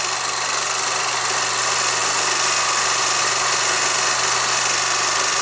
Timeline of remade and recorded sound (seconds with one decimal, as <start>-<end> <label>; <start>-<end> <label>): 0.0-5.4 recorded